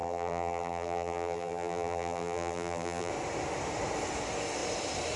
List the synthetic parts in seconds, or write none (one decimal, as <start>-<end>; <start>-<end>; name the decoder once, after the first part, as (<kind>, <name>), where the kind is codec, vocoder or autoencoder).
0.0-3.1 (vocoder, BigVGAN v2)